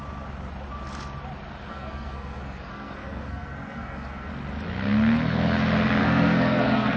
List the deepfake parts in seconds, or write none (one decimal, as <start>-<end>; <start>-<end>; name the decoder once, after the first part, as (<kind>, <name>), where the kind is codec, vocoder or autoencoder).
1.7-4.3 (codec, SNAC); 6.0-7.0